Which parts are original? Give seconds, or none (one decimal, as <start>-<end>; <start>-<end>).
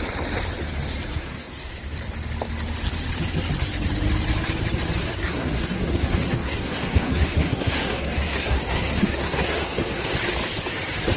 0.0-1.1; 1.8-5.0; 10.1-11.2